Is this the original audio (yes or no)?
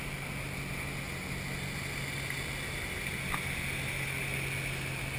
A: yes